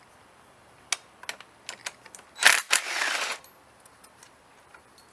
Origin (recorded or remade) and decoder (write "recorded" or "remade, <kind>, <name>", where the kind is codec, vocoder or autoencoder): recorded